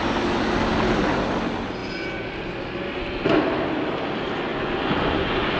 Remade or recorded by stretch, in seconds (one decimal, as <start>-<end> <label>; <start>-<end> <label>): 0.0-4.5 recorded; 4.5-5.6 remade